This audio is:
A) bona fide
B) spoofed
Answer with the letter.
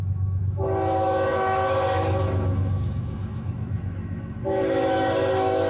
B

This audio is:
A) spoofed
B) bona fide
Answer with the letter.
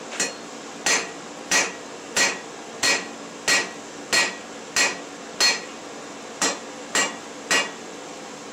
B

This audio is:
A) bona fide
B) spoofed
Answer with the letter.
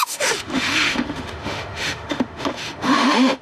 B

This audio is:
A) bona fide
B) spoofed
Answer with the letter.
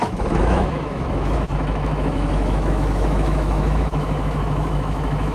B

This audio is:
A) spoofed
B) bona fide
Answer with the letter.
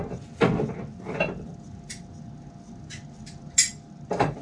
B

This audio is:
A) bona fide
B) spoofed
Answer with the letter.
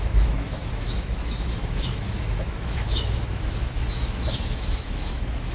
B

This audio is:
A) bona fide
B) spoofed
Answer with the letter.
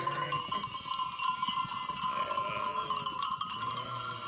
A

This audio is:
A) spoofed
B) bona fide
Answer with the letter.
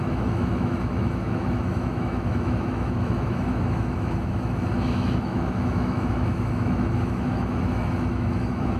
A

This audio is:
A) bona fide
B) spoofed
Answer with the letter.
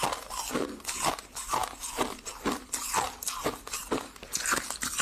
A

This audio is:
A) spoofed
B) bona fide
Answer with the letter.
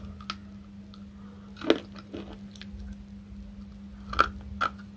B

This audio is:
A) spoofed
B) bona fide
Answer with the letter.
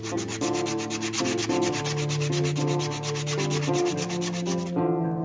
B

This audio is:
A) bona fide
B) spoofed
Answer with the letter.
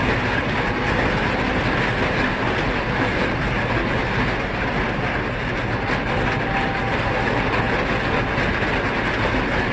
A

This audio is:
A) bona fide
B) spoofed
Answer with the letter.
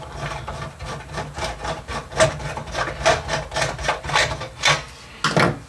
A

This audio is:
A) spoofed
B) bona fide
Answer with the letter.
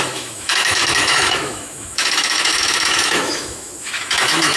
A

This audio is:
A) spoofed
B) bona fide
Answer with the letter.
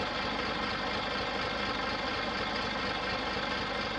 B